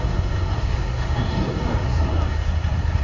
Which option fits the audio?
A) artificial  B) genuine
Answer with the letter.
A